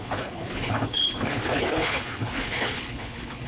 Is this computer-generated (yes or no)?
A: yes